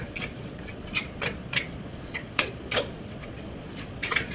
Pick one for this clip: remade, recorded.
remade